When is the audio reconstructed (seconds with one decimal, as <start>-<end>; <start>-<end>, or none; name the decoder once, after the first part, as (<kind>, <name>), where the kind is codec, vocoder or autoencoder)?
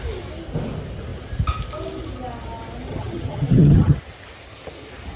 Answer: 2.9-4.0 (vocoder, HiFi-GAN)